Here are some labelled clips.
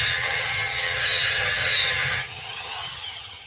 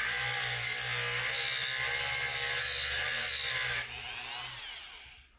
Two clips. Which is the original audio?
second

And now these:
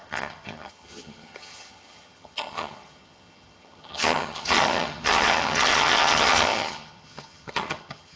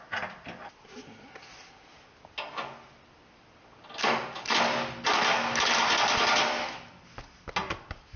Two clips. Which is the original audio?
second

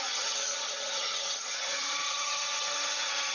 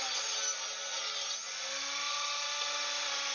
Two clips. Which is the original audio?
second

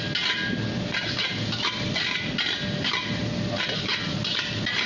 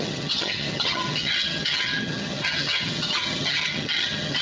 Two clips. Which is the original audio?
first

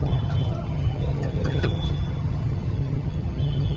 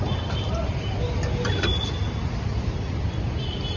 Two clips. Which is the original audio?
second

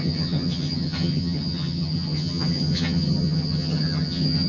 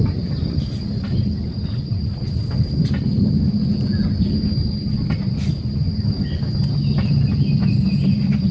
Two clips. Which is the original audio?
second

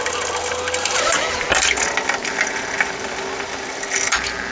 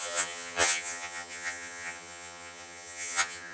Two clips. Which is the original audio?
first